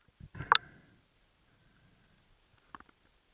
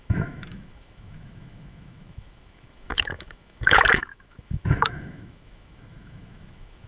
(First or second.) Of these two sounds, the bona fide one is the first